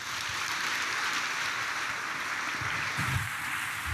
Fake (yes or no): yes